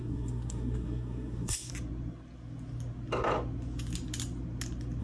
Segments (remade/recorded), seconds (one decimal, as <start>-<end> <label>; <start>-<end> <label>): 0.0-1.7 remade; 1.7-5.0 recorded